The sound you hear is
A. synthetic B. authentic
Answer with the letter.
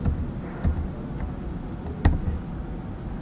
B